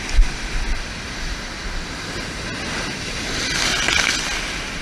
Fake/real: real